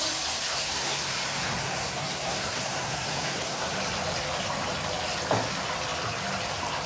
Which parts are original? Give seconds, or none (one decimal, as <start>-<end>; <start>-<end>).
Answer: 0.0-0.5; 3.7-6.9